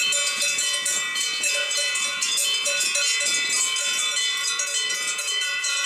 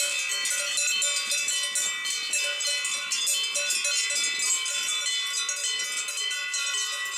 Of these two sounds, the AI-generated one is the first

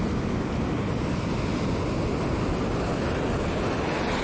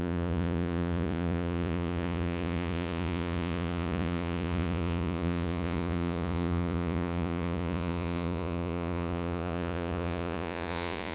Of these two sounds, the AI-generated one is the second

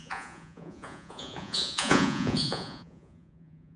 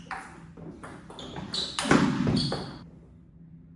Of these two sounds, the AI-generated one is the first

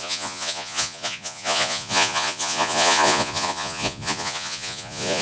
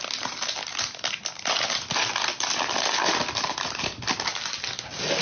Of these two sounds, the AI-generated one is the first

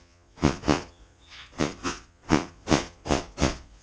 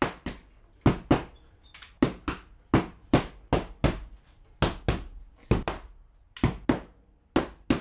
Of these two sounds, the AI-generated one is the first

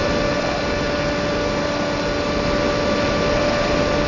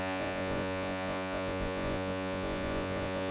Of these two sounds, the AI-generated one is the second